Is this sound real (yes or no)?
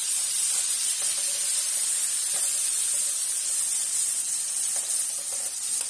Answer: yes